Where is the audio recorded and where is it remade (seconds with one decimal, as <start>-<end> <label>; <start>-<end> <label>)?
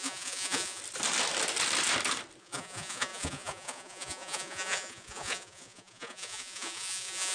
0.0-0.8 remade; 0.8-2.4 recorded; 2.4-7.3 remade